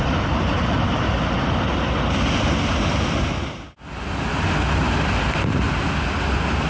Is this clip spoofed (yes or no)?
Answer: no